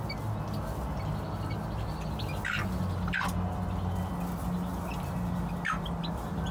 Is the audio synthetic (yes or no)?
no